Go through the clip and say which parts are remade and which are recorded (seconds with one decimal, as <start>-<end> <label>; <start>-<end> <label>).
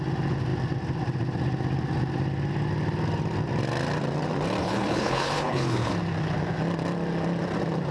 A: 0.0-4.6 recorded; 4.6-5.9 remade; 5.9-7.9 recorded